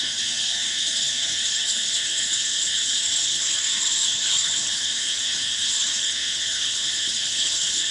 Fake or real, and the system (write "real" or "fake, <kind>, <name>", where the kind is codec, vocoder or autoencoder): fake, codec, HILCodec